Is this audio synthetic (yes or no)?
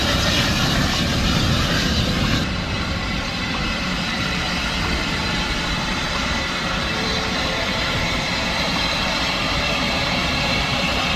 yes